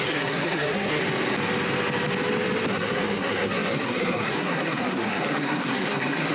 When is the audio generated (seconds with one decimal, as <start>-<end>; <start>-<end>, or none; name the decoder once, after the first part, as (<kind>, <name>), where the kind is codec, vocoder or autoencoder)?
0.0-1.0 (codec, SNAC); 2.7-6.3